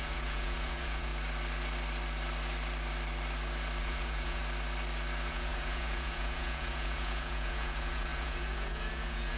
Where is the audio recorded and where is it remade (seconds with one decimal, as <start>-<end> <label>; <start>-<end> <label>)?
0.0-1.1 remade; 1.1-3.8 recorded; 3.8-4.4 remade; 4.4-5.3 recorded; 5.3-9.4 remade